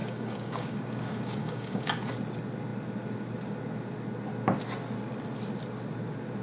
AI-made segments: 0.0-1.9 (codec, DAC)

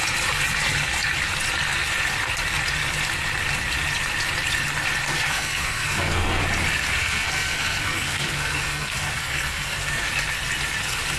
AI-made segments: 5.1-6.4 (codec, SNAC); 7.0-10.1

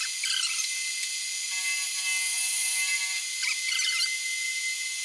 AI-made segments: none

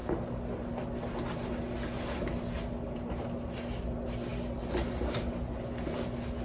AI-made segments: none